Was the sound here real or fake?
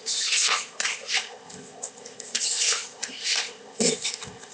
fake